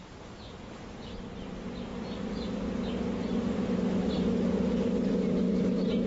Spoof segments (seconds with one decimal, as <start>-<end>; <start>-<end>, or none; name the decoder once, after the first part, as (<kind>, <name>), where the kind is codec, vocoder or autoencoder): none